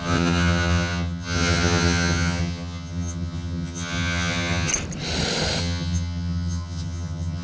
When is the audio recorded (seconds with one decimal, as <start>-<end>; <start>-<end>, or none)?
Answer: 4.7-5.6